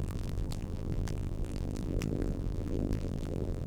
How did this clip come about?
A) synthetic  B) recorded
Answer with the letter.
A